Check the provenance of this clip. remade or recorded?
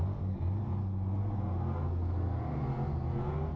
recorded